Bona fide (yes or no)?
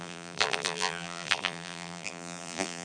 no